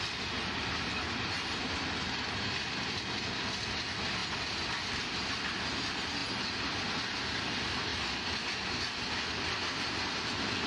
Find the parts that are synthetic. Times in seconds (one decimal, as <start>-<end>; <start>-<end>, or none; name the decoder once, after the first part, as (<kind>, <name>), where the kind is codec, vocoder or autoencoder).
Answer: none